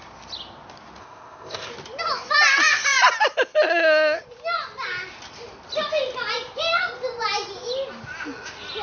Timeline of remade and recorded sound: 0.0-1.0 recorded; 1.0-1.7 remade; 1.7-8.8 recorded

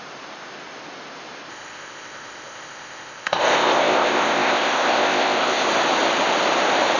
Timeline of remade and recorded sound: 0.0-1.5 recorded; 1.5-5.7 remade; 5.7-7.0 recorded

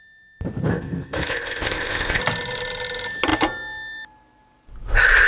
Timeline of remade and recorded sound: 0.0-0.7 recorded; 0.7-2.2 remade; 2.2-5.3 recorded

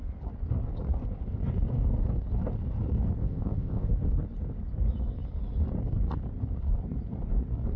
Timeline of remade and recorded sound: 0.0-3.2 recorded; 3.2-3.9 remade; 3.9-7.8 recorded

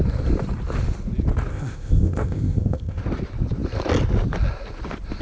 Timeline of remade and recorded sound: 0.0-1.5 recorded; 1.5-3.0 remade; 3.0-5.2 recorded

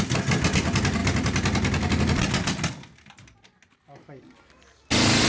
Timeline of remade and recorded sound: 0.0-5.3 recorded

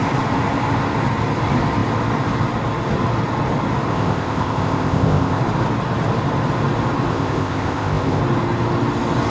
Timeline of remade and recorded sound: 0.0-3.9 recorded; 3.9-5.4 remade; 5.4-7.1 recorded; 7.1-8.2 remade; 8.2-9.3 recorded

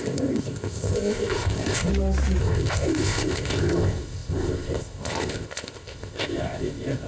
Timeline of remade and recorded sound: 0.0-1.9 remade; 1.9-2.4 recorded; 2.4-7.1 remade